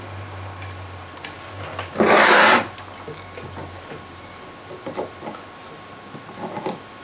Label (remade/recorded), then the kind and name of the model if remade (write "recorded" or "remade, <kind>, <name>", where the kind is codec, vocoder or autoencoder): recorded